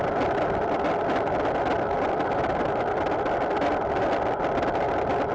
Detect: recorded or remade recorded